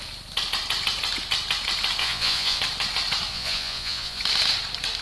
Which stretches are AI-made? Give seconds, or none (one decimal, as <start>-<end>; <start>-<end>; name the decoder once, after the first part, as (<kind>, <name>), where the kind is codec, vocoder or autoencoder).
2.0-2.6 (vocoder, Vocos); 3.3-4.2